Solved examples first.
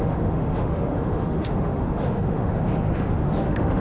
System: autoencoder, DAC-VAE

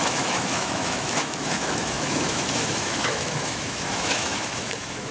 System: autoencoder, DAC-VAE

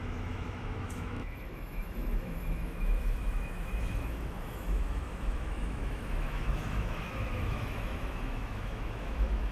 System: autoencoder, DAC-VAE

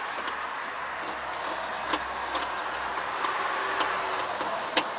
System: none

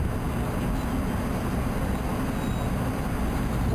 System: none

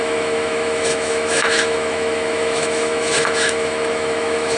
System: autoencoder, DAC-VAE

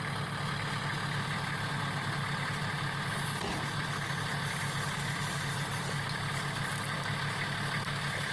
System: none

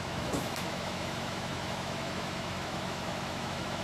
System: autoencoder, DAC-VAE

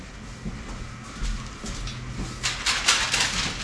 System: none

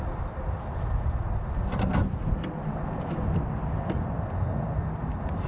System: none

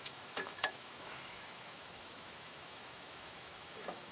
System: autoencoder, DAC-VAE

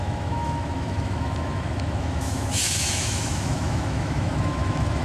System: autoencoder, DAC-VAE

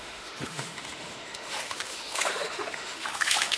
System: autoencoder, DAC-VAE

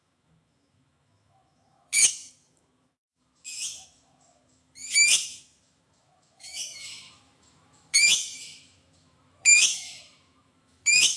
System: autoencoder, DAC-VAE